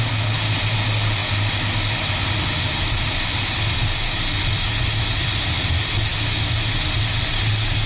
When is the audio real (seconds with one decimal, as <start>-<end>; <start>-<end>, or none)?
0.0-7.9